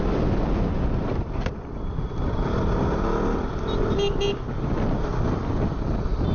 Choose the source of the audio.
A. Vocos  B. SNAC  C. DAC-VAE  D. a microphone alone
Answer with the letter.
D